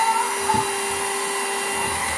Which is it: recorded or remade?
recorded